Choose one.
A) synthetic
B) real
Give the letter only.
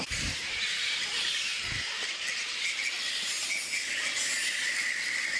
B